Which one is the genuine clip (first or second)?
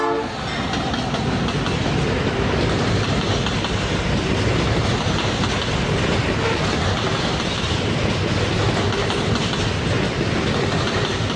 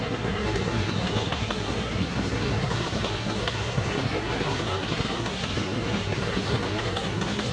first